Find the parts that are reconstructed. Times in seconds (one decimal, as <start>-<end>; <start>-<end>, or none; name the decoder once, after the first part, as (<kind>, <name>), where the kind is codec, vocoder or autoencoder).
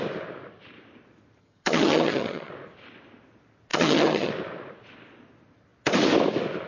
1.4-2.5 (vocoder, HiFi-GAN); 3.7-4.3